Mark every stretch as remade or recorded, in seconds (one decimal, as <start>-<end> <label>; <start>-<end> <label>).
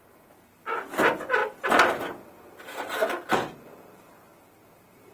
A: 0.0-5.1 recorded